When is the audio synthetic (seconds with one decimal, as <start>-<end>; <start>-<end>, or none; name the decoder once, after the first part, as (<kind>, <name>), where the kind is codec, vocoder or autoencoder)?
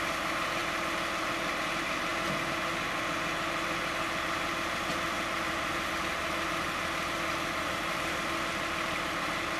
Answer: none